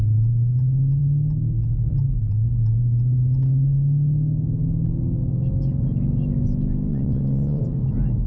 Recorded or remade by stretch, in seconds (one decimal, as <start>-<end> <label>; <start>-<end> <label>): 0.0-6.9 recorded; 6.9-7.6 remade; 7.6-8.3 recorded